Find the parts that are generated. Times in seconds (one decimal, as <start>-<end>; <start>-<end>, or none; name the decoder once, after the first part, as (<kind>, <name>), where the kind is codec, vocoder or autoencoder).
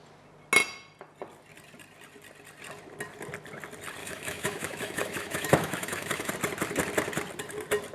4.0-6.3 (autoencoder, DAC-VAE)